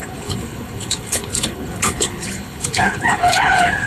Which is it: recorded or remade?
remade